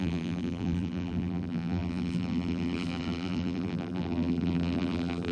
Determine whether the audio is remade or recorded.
remade